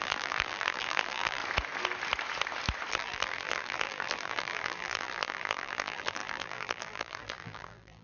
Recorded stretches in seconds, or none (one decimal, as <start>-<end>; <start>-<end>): 1.4-2.9

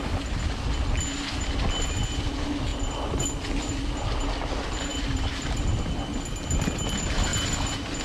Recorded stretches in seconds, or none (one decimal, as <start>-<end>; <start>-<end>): 0.0-4.9; 5.6-8.0